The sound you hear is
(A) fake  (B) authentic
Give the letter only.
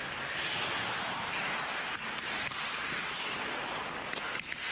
B